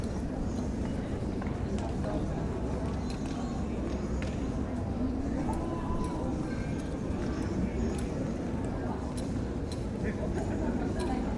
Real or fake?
real